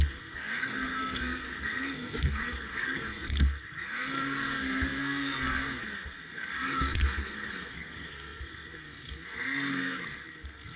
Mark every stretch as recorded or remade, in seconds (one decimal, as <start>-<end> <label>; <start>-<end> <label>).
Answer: 0.0-10.8 remade